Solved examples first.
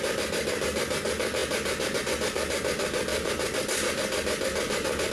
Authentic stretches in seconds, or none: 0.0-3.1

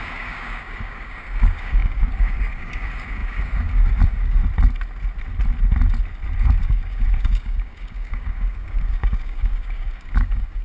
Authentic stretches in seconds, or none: 4.4-6.4

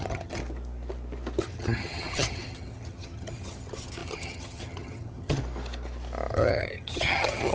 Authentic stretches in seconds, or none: 0.4-1.4; 5.4-6.3

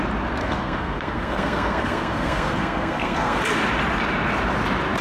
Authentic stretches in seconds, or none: 0.0-0.4; 3.4-5.0

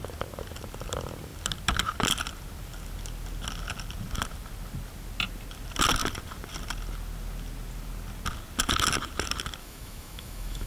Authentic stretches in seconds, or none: 0.0-9.6